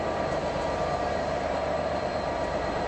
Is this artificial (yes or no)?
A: yes